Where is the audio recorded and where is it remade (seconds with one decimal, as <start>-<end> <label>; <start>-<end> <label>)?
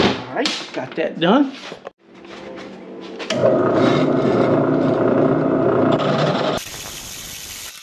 0.0-7.8 remade